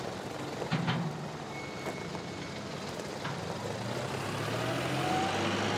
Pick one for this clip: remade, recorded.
recorded